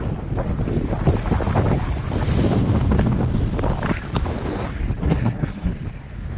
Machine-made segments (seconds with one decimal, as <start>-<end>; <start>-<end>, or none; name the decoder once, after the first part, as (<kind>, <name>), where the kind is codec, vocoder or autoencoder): 5.0-5.7 (codec, SNAC)